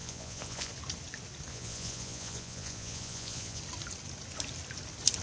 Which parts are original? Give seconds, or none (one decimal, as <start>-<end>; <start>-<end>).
0.7-1.5; 3.6-5.2